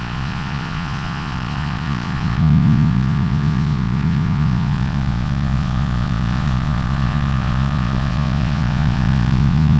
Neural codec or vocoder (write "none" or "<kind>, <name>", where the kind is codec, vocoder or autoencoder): vocoder, Vocos